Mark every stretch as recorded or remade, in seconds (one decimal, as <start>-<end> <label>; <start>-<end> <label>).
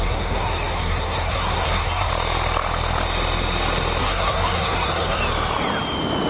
0.0-2.1 remade; 2.1-4.0 recorded; 4.0-5.2 remade; 5.2-6.3 recorded